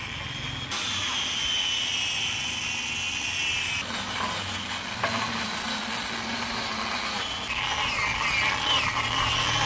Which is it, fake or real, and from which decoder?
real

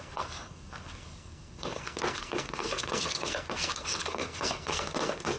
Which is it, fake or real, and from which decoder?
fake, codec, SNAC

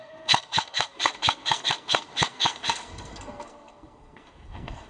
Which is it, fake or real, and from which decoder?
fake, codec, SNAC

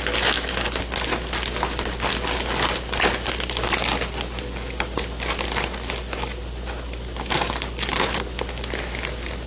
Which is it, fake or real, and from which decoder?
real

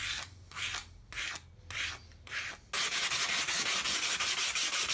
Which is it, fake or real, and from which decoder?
real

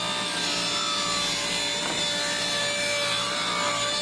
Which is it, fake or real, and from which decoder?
real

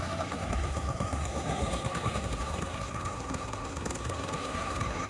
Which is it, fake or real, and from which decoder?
fake, codec, SNAC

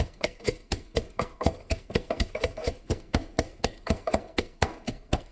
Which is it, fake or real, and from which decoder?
fake, codec, SNAC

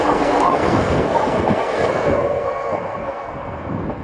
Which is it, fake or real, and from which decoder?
fake, codec, SNAC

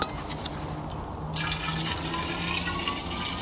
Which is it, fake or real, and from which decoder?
real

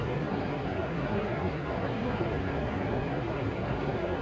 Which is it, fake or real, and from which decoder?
fake, codec, SNAC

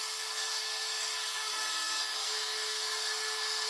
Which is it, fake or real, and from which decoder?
fake, codec, SNAC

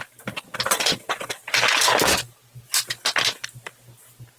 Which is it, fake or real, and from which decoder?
real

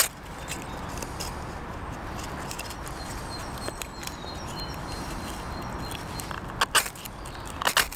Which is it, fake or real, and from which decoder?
real